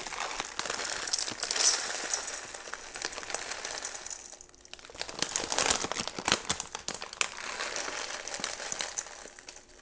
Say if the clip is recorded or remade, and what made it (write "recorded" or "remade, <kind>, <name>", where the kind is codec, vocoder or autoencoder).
recorded